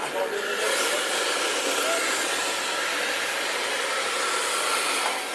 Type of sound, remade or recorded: recorded